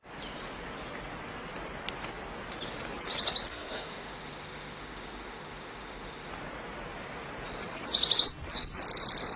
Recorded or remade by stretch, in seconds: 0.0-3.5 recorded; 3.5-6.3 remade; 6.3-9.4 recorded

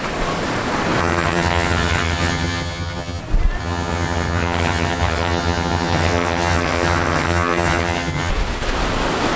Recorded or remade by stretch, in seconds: 0.0-1.0 recorded; 1.0-3.2 remade; 3.2-3.6 recorded; 3.6-8.3 remade; 8.3-9.4 recorded

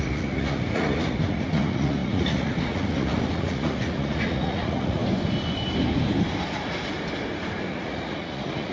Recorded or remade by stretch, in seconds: 0.0-5.0 remade; 5.0-7.7 recorded; 7.7-8.7 remade

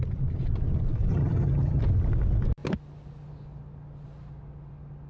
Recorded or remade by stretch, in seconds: 0.0-1.1 recorded; 1.1-1.8 remade; 1.8-5.1 recorded

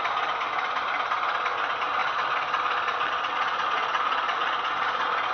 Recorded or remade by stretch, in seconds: 0.0-2.0 recorded; 2.0-5.3 remade

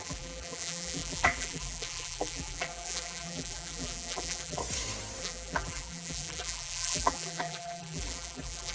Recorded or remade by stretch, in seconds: 0.0-4.6 remade; 4.6-5.2 recorded; 5.2-8.7 remade